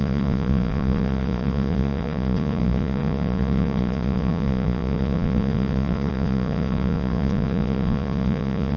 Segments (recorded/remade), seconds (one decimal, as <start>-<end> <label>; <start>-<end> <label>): 0.0-8.8 remade